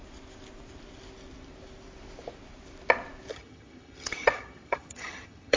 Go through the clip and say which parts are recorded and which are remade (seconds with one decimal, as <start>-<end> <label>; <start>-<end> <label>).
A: 0.0-3.3 recorded; 3.3-5.6 remade